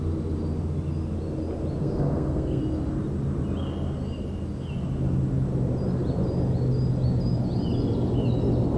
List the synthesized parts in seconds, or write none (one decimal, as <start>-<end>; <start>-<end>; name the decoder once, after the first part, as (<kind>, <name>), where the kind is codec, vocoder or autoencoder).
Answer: 1.8-2.6 (codec, SNAC)